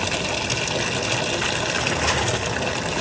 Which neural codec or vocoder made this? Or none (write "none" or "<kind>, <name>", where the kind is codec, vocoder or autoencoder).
none